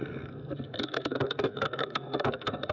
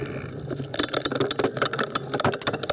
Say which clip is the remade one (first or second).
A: first